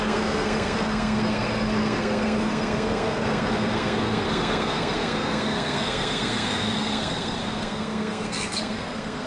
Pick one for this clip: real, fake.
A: fake